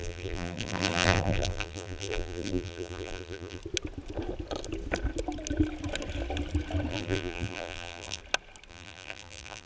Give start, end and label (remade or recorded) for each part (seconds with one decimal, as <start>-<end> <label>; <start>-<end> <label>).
0.0-3.6 remade; 3.6-6.9 recorded; 6.9-8.2 remade; 8.2-8.7 recorded; 8.7-9.7 remade